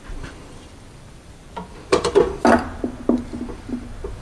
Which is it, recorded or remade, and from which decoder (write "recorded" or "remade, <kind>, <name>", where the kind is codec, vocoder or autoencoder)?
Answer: remade, vocoder, BigVGAN v2